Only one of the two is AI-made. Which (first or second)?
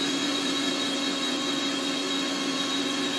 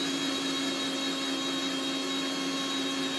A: first